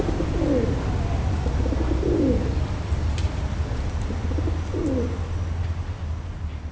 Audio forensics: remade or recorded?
recorded